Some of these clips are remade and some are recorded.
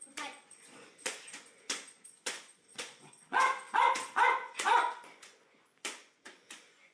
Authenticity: remade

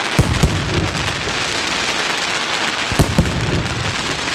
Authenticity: recorded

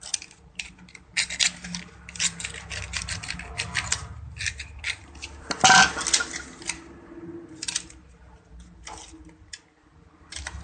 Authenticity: recorded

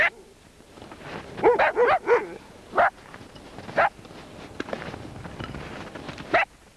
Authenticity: recorded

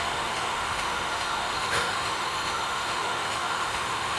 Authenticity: remade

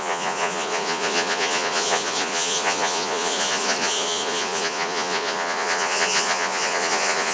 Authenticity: remade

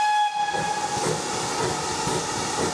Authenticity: recorded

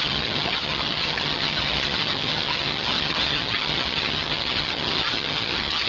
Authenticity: remade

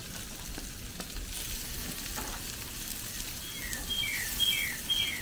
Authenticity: recorded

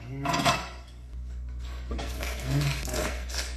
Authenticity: remade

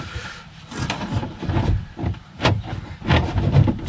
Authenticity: recorded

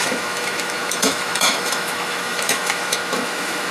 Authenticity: remade